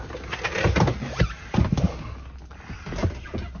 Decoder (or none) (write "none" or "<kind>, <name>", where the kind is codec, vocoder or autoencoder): none